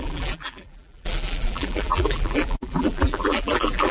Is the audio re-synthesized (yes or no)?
yes